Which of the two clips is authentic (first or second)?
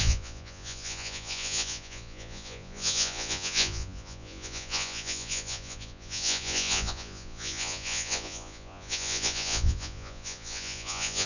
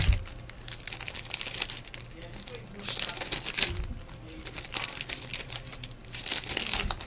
second